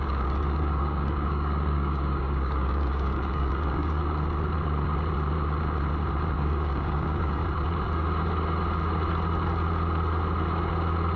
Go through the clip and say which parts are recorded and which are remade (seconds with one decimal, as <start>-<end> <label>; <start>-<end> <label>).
0.0-4.0 remade; 4.0-6.4 recorded; 6.4-7.4 remade; 7.4-11.2 recorded